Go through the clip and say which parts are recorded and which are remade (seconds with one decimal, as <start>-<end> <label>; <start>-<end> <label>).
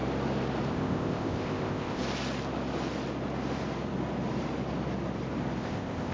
0.0-0.7 recorded; 0.7-2.0 remade; 2.0-5.6 recorded; 5.6-6.1 remade